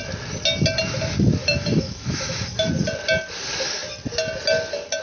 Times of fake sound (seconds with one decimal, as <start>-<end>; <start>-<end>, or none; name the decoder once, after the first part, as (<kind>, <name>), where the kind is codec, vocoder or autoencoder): 1.4-2.7 (autoencoder, DAC-VAE)